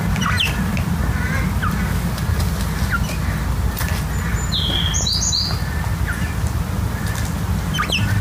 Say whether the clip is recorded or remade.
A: recorded